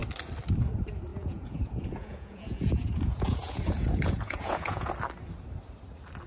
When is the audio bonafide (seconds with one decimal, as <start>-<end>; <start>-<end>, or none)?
0.0-1.1; 4.9-6.3

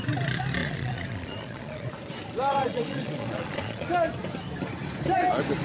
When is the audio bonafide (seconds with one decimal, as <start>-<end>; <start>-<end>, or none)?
0.0-0.6; 1.9-2.6; 3.9-5.6

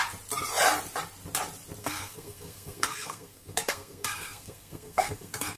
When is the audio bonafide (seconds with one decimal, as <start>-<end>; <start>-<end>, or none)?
0.0-1.8